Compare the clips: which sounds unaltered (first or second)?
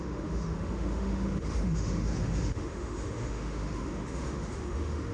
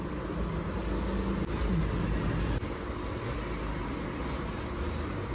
second